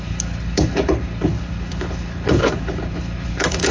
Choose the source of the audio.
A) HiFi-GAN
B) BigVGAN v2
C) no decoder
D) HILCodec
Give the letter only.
D